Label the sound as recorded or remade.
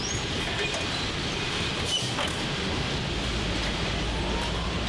remade